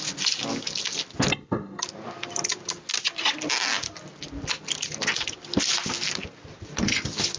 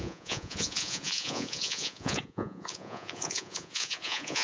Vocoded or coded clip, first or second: second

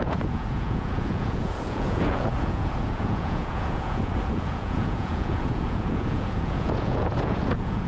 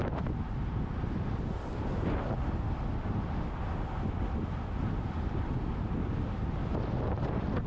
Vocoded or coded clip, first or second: first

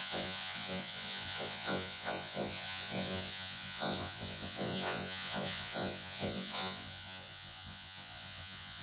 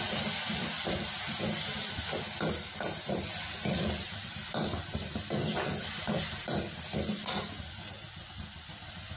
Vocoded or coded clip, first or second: first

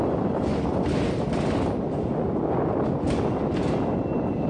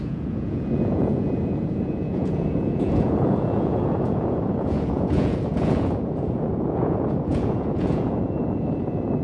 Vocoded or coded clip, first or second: second